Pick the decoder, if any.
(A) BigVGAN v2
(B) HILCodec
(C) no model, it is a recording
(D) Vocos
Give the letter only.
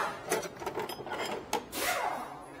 C